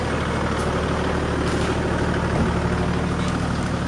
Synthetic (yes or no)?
no